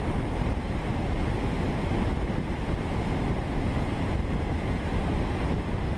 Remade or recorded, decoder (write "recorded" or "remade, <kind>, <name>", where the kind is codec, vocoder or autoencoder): recorded